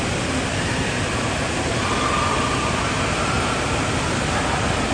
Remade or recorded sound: recorded